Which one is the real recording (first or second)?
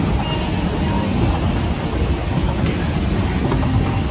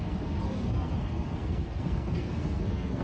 first